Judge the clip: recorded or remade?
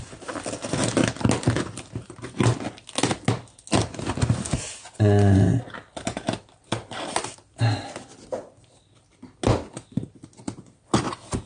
recorded